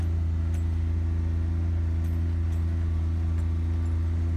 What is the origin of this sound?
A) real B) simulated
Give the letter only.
A